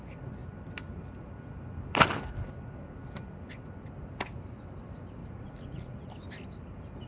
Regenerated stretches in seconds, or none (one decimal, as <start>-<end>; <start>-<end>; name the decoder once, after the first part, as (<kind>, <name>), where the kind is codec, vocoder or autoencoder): 5.2-6.1 (vocoder, Vocos)